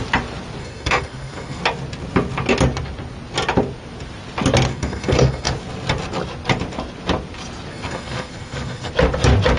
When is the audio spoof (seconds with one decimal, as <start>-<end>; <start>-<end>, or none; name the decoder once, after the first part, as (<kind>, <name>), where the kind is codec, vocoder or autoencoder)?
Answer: 0.6-1.6 (codec, SNAC); 4.7-5.5; 7.7-8.9